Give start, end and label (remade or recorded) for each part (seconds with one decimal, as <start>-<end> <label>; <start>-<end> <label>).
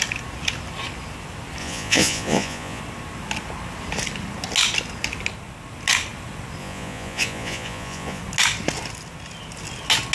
0.0-1.6 recorded; 1.6-2.8 remade; 2.8-6.6 recorded; 6.6-8.2 remade; 8.2-10.1 recorded